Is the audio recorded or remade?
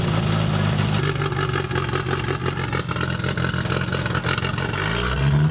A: recorded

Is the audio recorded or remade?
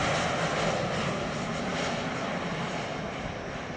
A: recorded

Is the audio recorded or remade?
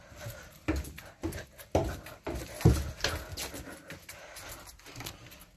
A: recorded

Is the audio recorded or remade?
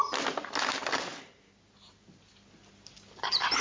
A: recorded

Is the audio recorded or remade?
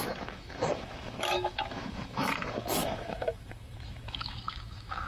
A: remade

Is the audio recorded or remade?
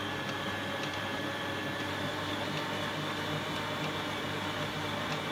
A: recorded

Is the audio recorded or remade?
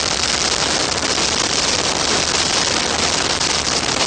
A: recorded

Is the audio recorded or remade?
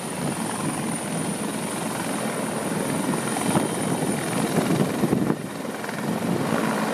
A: recorded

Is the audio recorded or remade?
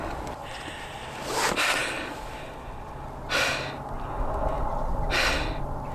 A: recorded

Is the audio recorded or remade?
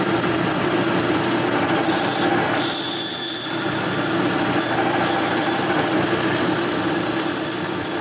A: recorded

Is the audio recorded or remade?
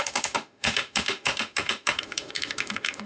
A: remade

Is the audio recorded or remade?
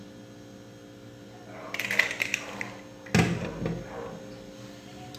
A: recorded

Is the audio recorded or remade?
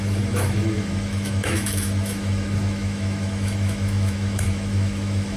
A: remade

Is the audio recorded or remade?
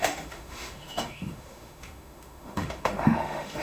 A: remade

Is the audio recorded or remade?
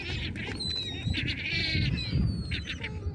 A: recorded